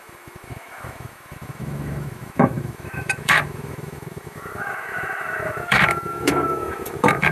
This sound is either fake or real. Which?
fake